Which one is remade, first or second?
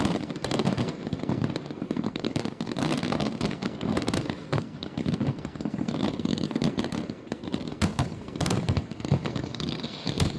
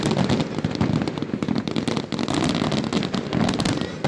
first